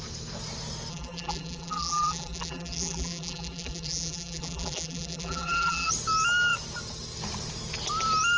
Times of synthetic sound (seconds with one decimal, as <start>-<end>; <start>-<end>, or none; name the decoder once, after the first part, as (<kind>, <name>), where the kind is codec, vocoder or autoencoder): 0.9-5.9 (vocoder, BigVGAN v2)